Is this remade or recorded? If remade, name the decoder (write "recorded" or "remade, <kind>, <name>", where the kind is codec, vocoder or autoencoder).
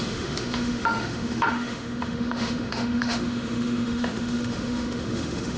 remade, autoencoder, DAC-VAE